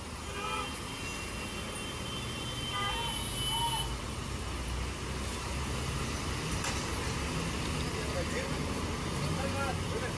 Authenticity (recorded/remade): recorded